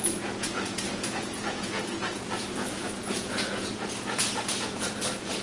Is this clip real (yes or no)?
no